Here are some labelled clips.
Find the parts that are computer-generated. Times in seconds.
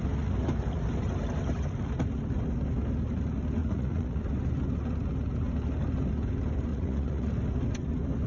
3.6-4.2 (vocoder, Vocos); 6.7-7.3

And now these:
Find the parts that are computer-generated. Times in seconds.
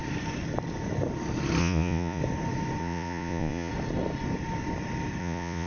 1.6-2.2 (vocoder, Vocos); 2.8-3.7; 5.2-5.7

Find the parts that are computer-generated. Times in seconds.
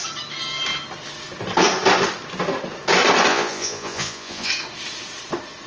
3.3-4.5 (vocoder, Vocos)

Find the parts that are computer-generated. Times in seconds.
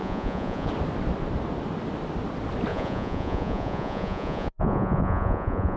0.0-0.7 (vocoder, Vocos); 2.7-5.8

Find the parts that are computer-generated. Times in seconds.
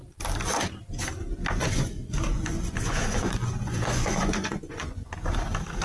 1.6-5.1 (vocoder, Vocos)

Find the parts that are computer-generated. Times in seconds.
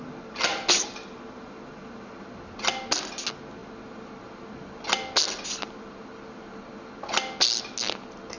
none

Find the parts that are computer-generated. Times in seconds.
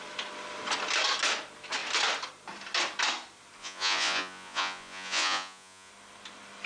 3.6-5.9 (vocoder, Vocos)